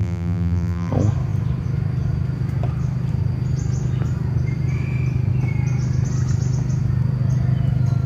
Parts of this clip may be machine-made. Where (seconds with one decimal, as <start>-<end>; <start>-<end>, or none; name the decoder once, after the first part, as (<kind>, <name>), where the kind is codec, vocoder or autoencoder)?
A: 0.0-0.9 (vocoder, BigVGAN v2)